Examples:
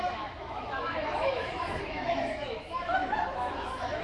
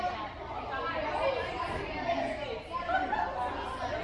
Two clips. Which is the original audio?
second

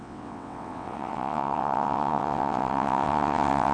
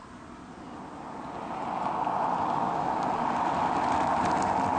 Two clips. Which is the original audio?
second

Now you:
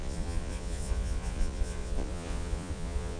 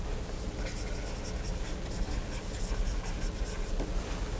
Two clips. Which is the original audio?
second